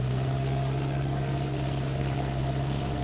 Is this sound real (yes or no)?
no